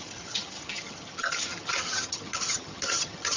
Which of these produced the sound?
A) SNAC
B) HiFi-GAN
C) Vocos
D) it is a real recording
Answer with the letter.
B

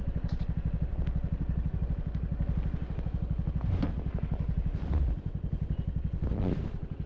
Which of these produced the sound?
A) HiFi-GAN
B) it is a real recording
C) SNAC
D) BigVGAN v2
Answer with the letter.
B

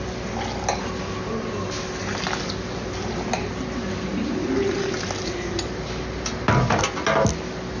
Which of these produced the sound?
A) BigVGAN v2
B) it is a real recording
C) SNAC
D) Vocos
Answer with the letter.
B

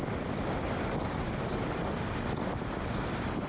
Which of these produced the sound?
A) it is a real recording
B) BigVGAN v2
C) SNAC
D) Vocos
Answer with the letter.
A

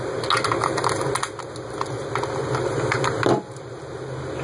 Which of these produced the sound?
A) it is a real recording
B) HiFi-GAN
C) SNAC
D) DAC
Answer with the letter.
A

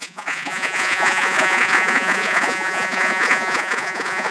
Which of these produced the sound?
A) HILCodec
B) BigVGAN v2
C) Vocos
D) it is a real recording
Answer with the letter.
C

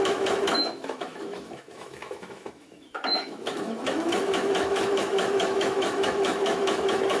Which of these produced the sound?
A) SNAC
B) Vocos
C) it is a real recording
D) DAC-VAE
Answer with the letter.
D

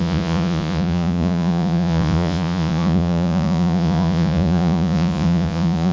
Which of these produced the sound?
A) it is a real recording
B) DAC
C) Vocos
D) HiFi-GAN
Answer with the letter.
C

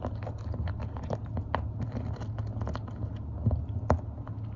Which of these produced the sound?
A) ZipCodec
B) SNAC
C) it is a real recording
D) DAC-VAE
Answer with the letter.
C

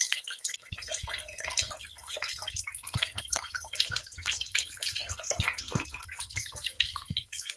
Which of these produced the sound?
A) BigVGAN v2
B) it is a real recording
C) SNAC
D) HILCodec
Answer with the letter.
C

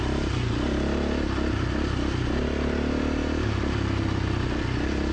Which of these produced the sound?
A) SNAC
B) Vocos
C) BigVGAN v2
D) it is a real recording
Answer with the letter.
D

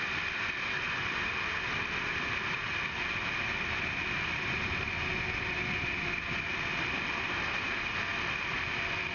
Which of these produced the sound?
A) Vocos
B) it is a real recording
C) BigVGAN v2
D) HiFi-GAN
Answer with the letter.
B